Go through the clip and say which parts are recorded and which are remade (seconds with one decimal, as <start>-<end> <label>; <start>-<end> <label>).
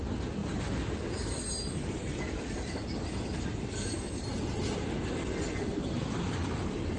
0.0-7.0 recorded